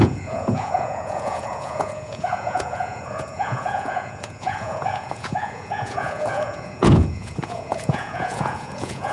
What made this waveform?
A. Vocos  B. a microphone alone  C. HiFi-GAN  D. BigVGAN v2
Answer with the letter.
A